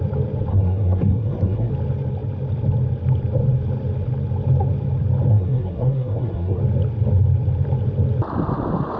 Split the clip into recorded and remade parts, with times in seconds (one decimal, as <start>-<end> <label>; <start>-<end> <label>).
0.0-0.5 recorded; 0.5-1.7 remade; 1.7-5.3 recorded; 5.3-6.6 remade; 6.6-9.0 recorded